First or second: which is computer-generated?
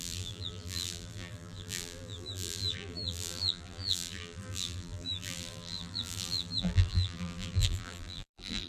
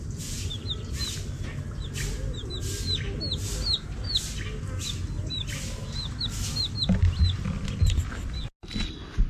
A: first